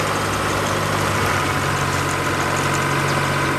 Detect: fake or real real